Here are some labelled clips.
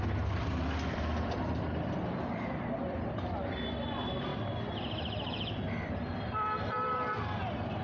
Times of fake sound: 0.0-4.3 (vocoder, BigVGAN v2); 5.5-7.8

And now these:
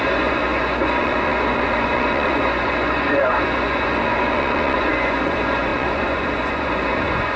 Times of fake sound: 0.0-7.4 (vocoder, Vocos)